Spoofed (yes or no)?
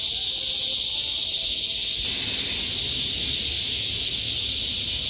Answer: no